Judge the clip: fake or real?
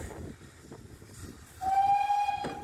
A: real